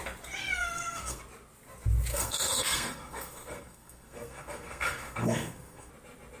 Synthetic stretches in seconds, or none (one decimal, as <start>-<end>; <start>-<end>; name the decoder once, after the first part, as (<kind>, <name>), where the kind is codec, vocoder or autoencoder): 0.4-1.2 (codec, SNAC); 2.1-5.9